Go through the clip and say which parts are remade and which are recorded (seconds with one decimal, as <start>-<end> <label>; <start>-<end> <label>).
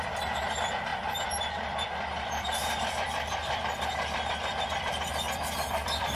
0.0-6.2 remade